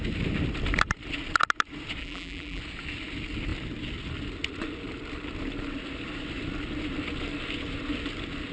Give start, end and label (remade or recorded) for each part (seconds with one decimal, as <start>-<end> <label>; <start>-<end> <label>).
0.0-2.0 recorded; 2.0-2.6 remade; 2.6-8.5 recorded